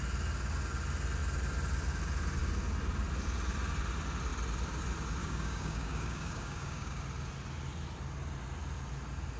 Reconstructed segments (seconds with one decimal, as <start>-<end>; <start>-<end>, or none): 5.2-7.0

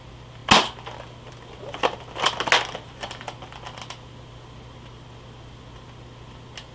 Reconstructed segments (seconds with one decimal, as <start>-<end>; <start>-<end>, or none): none